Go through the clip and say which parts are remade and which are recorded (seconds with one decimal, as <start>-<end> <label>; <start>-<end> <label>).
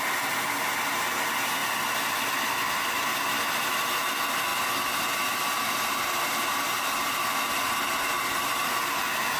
0.0-9.4 recorded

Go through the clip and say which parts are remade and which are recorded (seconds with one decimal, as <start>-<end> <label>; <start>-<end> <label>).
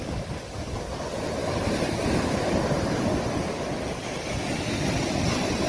0.0-1.4 recorded; 1.4-4.8 remade; 4.8-5.7 recorded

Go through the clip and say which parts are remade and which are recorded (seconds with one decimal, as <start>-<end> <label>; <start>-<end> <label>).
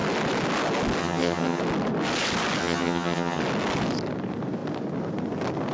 0.0-1.0 recorded; 1.0-1.6 remade; 1.6-2.6 recorded; 2.6-3.4 remade; 3.4-5.7 recorded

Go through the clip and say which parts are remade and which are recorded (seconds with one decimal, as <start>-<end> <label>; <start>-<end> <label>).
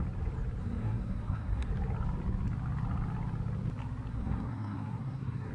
0.0-0.6 recorded; 0.6-1.7 remade; 1.7-4.1 recorded; 4.1-5.5 remade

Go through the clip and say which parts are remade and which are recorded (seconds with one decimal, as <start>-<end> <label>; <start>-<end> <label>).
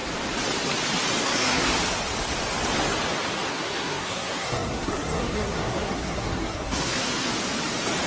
0.0-1.2 recorded; 1.2-1.7 remade; 1.7-3.5 recorded; 3.5-7.3 remade; 7.3-8.1 recorded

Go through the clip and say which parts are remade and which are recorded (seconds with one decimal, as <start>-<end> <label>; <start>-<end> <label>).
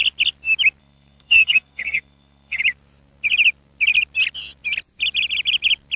0.0-0.8 recorded; 0.8-2.6 remade; 2.6-6.0 recorded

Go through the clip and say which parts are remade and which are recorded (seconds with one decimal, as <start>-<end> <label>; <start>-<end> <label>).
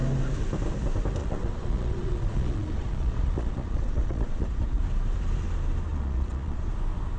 0.0-1.2 recorded; 1.2-4.8 remade; 4.8-5.9 recorded; 5.9-6.7 remade; 6.7-7.2 recorded